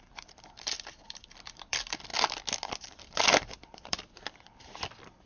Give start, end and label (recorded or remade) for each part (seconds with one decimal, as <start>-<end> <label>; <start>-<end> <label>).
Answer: 0.0-2.1 remade; 2.1-3.0 recorded; 3.0-5.3 remade